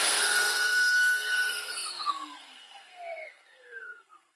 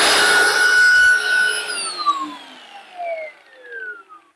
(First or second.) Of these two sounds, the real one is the second